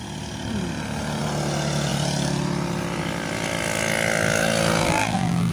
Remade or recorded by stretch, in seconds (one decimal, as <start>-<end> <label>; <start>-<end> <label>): 0.0-4.8 recorded; 4.8-5.5 remade

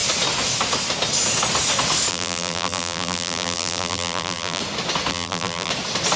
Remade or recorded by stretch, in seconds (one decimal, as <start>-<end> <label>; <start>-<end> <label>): 0.0-2.1 recorded; 2.1-4.6 remade; 4.6-5.1 recorded; 5.1-5.7 remade; 5.7-6.2 recorded

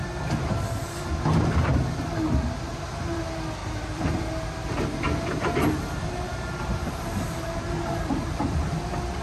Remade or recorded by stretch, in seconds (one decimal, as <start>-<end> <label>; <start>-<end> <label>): 0.0-3.6 recorded; 3.6-8.5 remade; 8.5-9.2 recorded

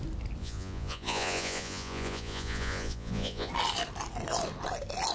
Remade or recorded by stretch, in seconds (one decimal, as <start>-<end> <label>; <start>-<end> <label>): 0.0-0.4 recorded; 0.4-3.5 remade; 3.5-5.1 recorded

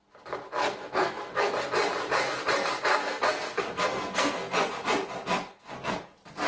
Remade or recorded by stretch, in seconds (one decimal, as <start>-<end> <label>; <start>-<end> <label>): 0.0-0.6 recorded; 0.6-1.5 remade; 1.5-2.9 recorded; 2.9-4.7 remade; 4.7-5.3 recorded; 5.3-6.0 remade; 6.0-6.5 recorded

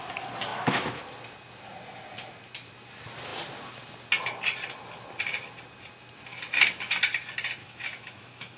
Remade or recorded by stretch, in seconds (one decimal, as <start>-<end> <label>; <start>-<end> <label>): 0.0-0.5 recorded; 0.5-1.0 remade; 1.0-7.6 recorded; 7.6-8.6 remade

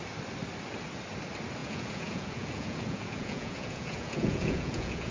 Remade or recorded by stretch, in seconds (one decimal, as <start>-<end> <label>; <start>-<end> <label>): 0.0-1.6 recorded; 1.6-5.1 remade

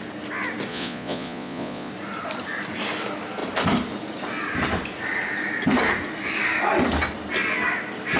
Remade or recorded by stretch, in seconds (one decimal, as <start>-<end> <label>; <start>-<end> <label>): 0.0-0.7 recorded; 0.7-1.9 remade; 1.9-8.2 recorded